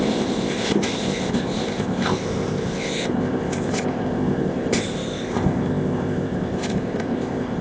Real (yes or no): no